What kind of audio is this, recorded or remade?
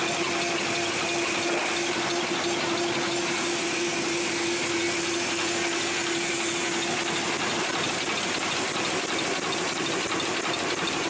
recorded